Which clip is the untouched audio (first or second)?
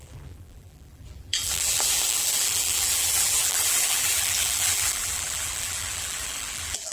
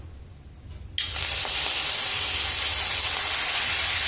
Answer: second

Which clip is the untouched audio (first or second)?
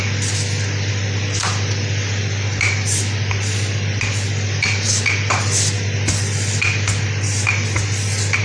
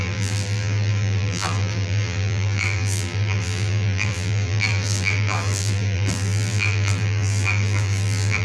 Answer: first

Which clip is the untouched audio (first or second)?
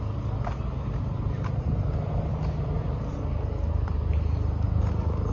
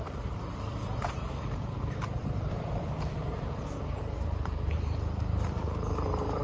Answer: first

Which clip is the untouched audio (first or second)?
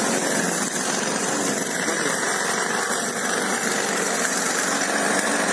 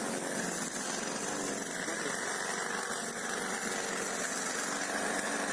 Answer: second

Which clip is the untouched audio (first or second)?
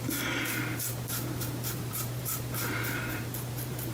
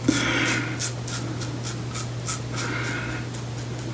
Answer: second